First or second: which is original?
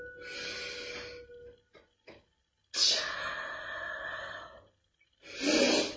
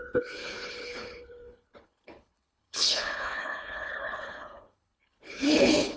first